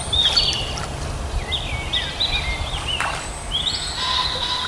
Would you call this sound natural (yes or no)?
yes